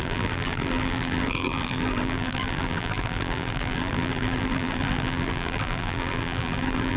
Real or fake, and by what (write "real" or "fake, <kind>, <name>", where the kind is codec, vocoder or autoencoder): fake, vocoder, BigVGAN v2